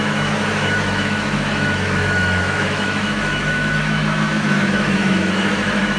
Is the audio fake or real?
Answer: fake